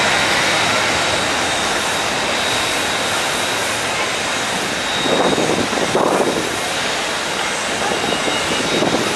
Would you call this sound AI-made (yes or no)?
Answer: no